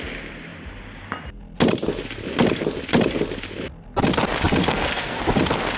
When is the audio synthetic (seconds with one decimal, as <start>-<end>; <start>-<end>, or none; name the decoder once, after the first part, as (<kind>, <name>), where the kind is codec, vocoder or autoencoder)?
4.6-5.2 (codec, SNAC)